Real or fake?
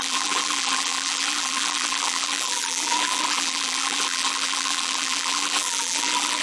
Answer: fake